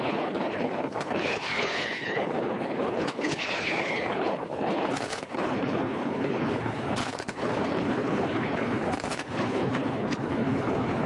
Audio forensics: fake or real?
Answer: fake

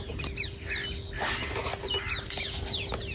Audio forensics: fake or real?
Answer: real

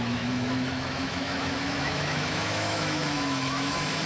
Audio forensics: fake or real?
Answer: fake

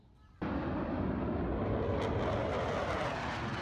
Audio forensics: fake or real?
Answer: real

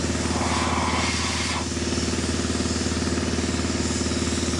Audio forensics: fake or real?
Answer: real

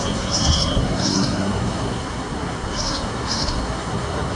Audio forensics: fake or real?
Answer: fake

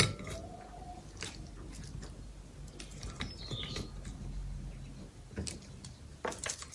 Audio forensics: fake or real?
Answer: real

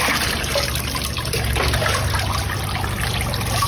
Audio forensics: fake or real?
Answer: real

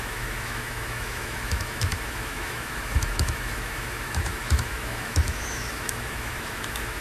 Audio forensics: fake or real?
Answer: fake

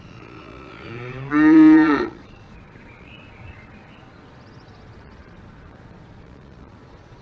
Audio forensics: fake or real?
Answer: fake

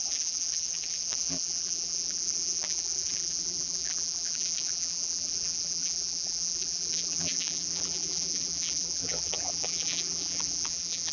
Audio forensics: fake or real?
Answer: fake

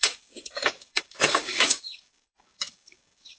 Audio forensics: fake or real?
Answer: fake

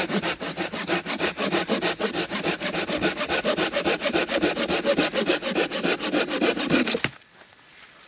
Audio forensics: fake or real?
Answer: real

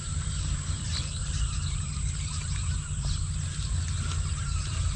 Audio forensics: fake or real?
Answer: real